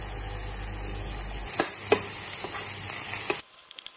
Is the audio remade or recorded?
recorded